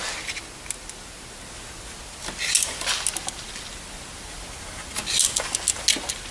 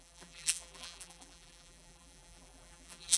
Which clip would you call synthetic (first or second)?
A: second